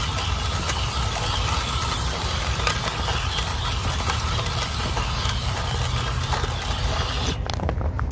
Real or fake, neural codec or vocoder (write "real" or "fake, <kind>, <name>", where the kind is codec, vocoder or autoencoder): real